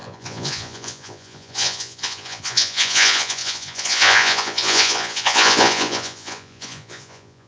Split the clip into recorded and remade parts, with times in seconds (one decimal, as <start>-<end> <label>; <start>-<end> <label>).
0.0-7.5 remade